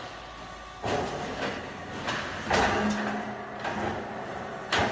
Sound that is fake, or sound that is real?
real